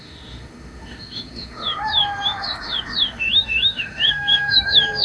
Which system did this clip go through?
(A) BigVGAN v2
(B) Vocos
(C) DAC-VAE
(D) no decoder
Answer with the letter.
C